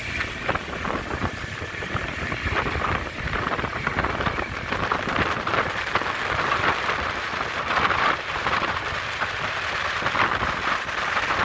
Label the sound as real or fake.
fake